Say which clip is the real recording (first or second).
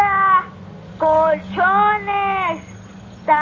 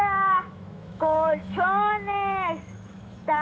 first